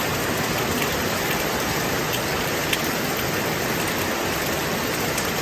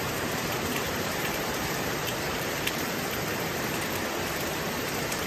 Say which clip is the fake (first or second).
second